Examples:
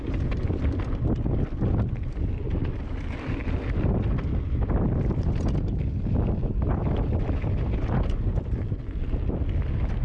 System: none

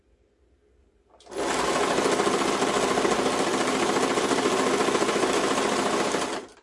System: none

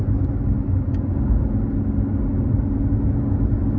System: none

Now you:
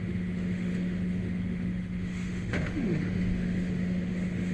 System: autoencoder, DAC-VAE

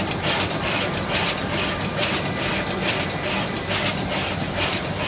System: none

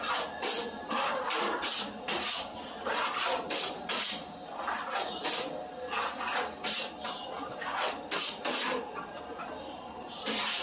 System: none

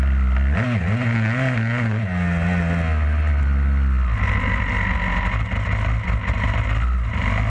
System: none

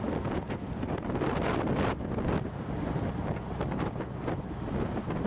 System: none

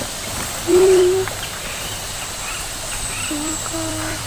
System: vocoder, BigVGAN v2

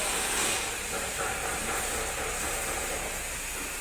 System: none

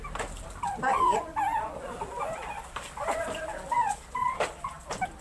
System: none